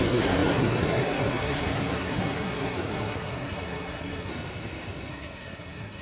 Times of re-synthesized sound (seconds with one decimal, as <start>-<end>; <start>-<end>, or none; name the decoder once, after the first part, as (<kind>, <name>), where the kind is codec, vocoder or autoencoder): 0.0-4.3 (codec, SNAC); 5.1-6.0